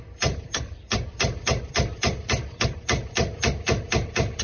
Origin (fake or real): fake